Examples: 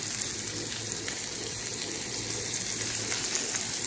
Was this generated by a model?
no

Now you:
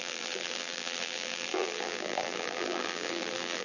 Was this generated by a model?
yes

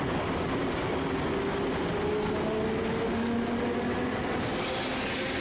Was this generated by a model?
no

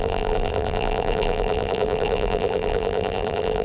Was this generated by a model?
yes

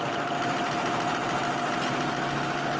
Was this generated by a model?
no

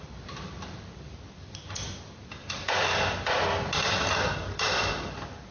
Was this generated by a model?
yes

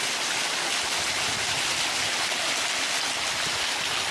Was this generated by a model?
no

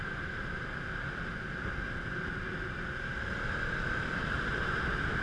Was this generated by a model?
no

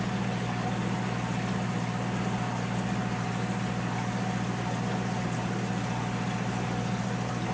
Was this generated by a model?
no